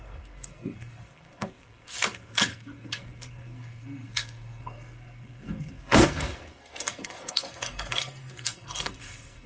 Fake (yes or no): yes